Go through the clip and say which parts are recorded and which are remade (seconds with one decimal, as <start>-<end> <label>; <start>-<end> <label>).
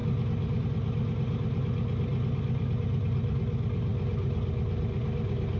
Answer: 0.0-5.6 recorded